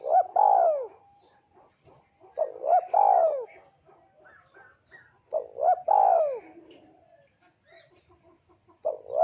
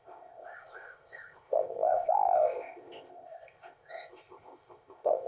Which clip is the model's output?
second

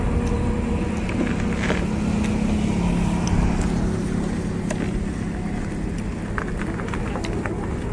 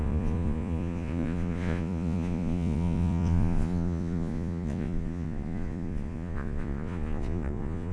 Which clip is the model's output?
second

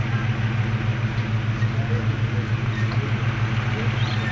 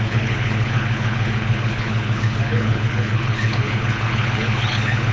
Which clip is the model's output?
second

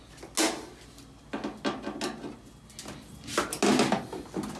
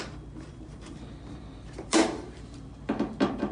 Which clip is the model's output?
second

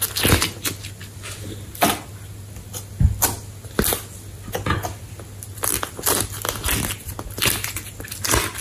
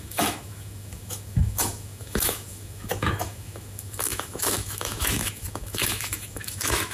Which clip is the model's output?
second